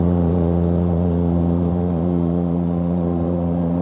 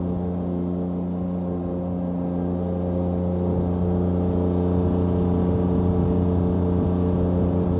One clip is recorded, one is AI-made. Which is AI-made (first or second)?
first